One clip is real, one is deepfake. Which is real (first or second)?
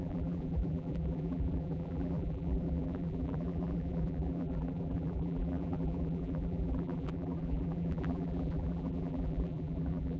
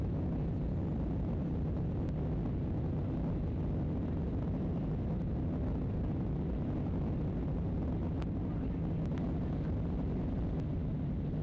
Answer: second